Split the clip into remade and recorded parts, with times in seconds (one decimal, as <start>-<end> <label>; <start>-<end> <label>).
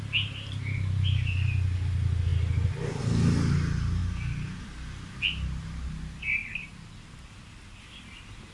0.0-4.0 recorded; 4.0-5.1 remade; 5.1-6.4 recorded; 6.4-7.8 remade; 7.8-8.5 recorded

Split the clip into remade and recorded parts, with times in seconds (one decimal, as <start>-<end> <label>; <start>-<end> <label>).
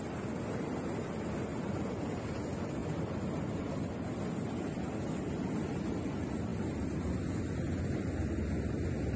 0.0-9.2 recorded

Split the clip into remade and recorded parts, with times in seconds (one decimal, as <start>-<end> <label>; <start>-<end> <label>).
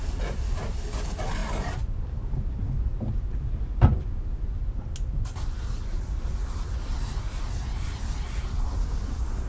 0.0-9.5 recorded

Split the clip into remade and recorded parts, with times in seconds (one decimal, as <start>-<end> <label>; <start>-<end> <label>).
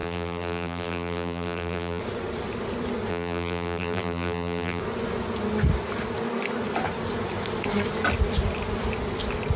0.0-2.0 remade; 2.0-3.1 recorded; 3.1-4.8 remade; 4.8-9.6 recorded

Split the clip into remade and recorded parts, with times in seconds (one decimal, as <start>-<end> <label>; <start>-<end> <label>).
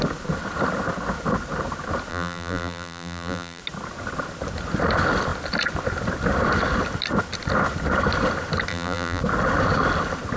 0.0-2.1 recorded; 2.1-3.6 remade; 3.6-8.7 recorded; 8.7-9.2 remade; 9.2-10.4 recorded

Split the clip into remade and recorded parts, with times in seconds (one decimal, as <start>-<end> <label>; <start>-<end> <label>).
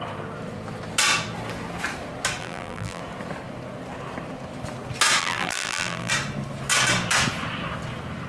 0.0-2.4 recorded; 2.4-3.0 remade; 3.0-5.2 recorded; 5.2-6.1 remade; 6.1-8.3 recorded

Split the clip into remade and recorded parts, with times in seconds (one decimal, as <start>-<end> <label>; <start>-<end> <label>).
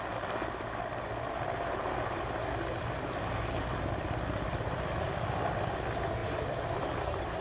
0.0-6.2 recorded; 6.2-7.4 remade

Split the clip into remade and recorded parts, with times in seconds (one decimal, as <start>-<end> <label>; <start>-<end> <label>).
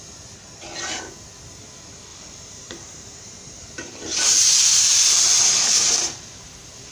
0.0-2.1 recorded; 2.1-5.9 remade; 5.9-6.9 recorded